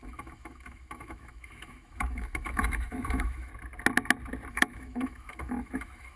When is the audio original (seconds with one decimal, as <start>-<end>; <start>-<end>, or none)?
3.5-4.5